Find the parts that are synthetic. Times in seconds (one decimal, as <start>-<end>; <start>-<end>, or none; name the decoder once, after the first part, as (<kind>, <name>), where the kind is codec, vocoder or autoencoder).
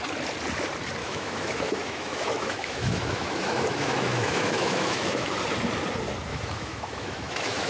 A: 1.0-5.4 (autoencoder, DAC-VAE); 6.3-7.7